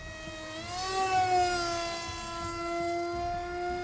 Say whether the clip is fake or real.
real